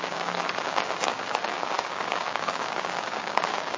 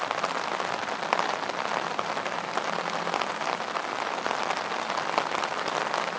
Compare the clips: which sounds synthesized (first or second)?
first